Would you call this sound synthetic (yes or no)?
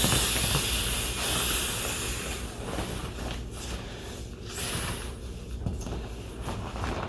no